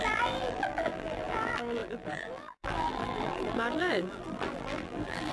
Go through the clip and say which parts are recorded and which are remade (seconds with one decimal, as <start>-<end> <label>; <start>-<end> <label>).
0.0-5.3 remade